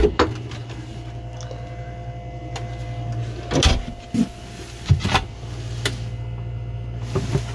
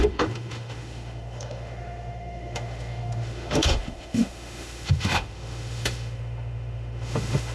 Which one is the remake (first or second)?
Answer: second